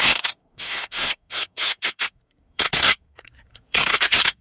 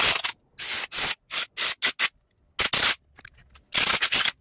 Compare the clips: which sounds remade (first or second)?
first